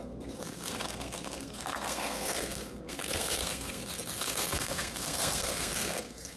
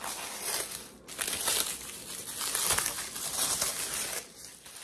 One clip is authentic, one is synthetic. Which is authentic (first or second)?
second